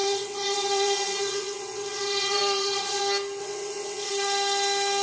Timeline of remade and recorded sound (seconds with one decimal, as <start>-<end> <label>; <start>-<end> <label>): 0.0-3.0 remade; 3.0-3.4 recorded; 3.4-4.1 remade; 4.1-5.0 recorded